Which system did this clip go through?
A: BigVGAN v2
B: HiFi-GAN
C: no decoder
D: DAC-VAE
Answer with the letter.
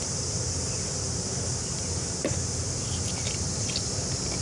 C